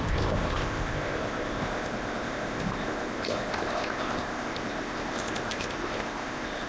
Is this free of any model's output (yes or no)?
no